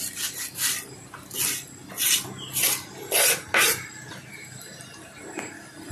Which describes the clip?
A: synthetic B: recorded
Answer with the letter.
B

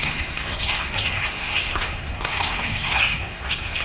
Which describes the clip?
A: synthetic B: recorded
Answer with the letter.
A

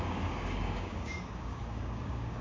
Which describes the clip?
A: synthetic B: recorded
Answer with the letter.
A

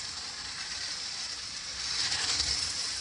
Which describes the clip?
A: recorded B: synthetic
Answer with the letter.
B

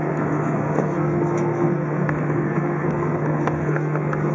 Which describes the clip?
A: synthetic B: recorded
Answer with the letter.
A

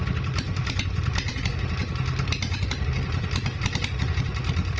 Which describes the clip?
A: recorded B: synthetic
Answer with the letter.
A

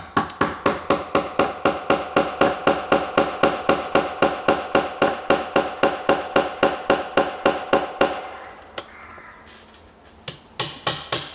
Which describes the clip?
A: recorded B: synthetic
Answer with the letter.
A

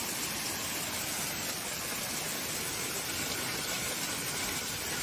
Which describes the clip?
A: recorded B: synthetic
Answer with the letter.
A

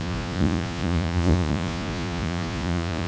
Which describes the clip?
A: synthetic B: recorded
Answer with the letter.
A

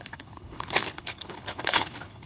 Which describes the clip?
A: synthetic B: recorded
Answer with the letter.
A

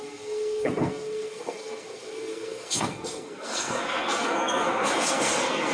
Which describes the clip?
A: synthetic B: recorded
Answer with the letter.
A